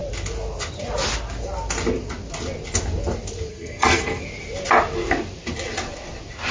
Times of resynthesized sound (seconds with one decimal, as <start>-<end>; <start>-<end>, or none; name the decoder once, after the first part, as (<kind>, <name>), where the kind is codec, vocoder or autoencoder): 3.5-4.2 (codec, SNAC)